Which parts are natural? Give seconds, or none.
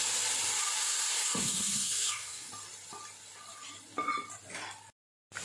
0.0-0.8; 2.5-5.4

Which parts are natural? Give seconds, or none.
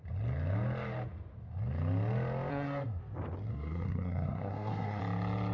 0.0-2.5; 3.0-3.5; 5.0-5.5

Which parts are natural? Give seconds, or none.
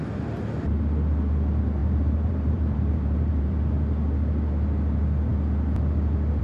0.0-1.8; 3.6-6.4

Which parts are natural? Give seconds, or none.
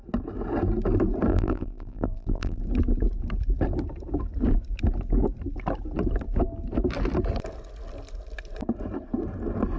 0.0-1.3; 2.6-9.8